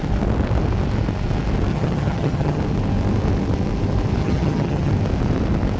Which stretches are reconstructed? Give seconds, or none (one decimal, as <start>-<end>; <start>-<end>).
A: 1.7-2.6; 4.2-4.9